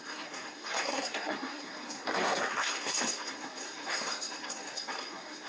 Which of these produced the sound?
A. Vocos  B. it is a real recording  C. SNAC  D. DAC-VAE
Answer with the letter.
C